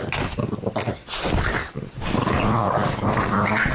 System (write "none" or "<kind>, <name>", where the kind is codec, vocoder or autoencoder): none